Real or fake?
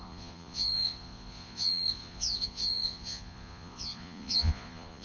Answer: fake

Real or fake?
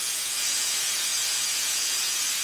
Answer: fake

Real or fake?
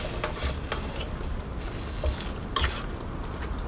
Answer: real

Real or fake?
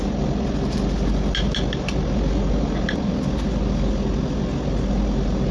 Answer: real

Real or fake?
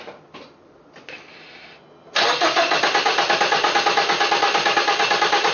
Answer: real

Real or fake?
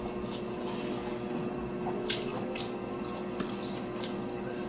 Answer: real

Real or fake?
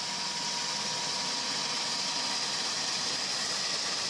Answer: real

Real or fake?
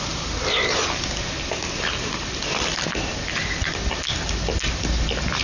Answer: real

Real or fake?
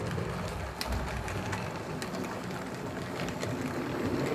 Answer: real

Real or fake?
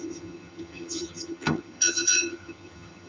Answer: fake